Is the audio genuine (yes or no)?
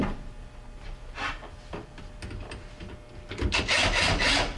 yes